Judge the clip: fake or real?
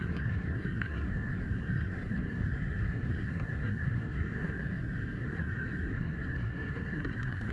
fake